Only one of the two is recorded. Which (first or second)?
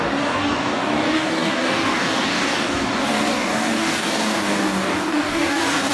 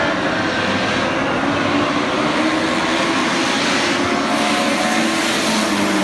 second